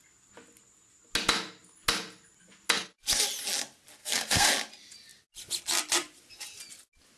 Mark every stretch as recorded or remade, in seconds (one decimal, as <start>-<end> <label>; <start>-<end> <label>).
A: 0.0-4.0 recorded; 4.0-4.5 remade; 4.5-7.2 recorded